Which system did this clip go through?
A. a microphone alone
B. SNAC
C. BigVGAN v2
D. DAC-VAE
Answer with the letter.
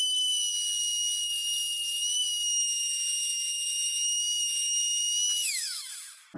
D